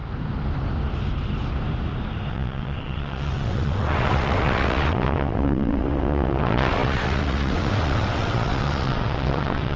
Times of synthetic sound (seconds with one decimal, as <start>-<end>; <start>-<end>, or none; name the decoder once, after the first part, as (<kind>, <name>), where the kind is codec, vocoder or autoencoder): 2.3-9.8 (vocoder, WaveNeXt)